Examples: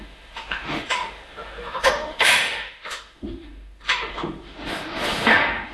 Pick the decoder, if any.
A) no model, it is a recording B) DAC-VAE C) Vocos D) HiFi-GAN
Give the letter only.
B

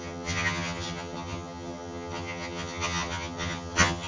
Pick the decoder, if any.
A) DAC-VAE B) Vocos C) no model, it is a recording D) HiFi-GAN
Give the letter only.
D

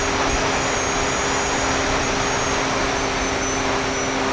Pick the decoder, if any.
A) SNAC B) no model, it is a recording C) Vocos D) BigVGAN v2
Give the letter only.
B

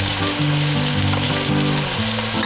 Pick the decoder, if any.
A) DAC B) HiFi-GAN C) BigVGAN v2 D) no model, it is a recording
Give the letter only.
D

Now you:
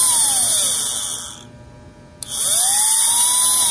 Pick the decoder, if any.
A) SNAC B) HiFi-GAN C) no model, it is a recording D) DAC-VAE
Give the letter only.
C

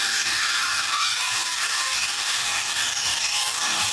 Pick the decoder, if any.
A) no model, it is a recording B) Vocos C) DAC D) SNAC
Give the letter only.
C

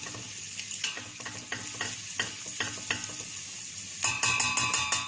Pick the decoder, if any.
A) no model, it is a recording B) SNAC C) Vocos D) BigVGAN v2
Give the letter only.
A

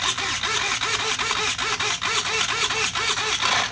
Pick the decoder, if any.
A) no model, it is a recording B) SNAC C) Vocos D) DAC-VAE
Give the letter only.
A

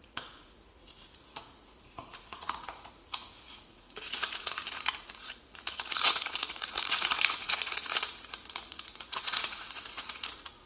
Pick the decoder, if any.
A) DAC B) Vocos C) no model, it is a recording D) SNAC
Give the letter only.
B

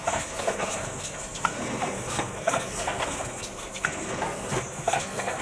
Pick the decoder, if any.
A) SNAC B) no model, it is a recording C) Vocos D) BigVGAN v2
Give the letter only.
A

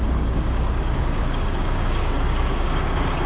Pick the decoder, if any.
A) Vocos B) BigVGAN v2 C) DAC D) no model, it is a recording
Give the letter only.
C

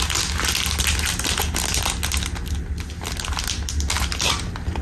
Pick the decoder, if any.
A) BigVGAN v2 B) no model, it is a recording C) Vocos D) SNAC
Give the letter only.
B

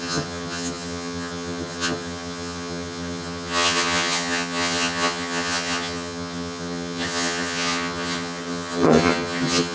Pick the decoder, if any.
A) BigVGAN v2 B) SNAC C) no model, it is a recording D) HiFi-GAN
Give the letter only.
D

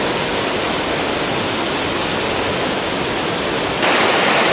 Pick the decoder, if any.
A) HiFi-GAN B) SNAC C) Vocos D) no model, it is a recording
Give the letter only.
D